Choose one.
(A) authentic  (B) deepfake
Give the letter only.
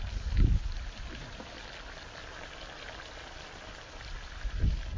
A